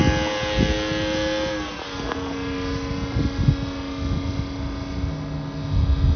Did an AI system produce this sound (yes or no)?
no